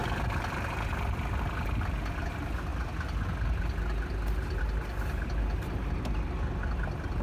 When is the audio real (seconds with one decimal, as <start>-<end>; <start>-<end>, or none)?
0.0-7.2